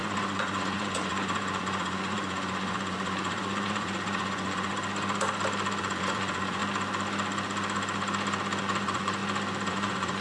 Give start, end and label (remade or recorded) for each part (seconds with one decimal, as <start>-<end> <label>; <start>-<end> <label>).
0.0-4.7 remade; 4.7-5.8 recorded; 5.8-6.6 remade; 6.6-8.6 recorded; 8.6-9.2 remade; 9.2-9.7 recorded; 9.7-10.2 remade

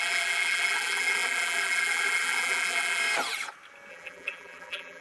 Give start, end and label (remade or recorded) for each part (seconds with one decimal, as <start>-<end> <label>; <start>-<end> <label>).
0.0-3.0 remade; 3.0-3.9 recorded; 3.9-5.0 remade

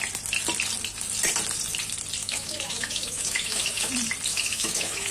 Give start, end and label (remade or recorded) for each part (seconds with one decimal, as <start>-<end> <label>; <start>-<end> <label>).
0.0-2.2 recorded; 2.2-3.9 remade; 3.9-4.3 recorded; 4.3-5.1 remade

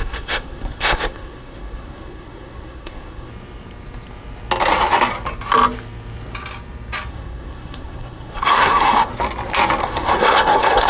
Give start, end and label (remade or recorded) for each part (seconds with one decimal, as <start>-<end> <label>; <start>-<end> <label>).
0.0-3.3 remade; 3.3-7.1 recorded; 7.1-9.1 remade; 9.1-9.8 recorded; 9.8-10.9 remade

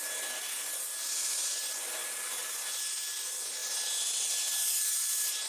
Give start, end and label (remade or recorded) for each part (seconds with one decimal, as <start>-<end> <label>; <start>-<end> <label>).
0.0-5.5 recorded

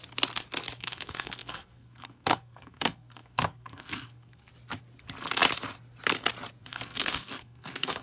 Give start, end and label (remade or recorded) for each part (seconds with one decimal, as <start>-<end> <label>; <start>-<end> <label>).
0.0-0.8 recorded; 0.8-4.5 remade; 4.5-6.6 recorded; 6.6-8.0 remade

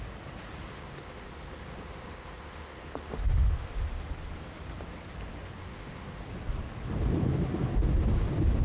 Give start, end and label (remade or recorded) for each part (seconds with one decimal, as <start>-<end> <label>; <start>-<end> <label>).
0.0-0.7 recorded; 0.7-3.9 remade; 3.9-5.6 recorded; 5.6-6.2 remade; 6.2-8.6 recorded